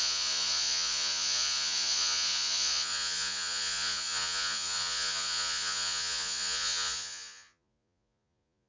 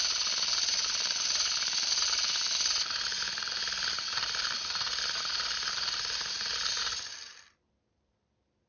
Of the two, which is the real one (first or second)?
second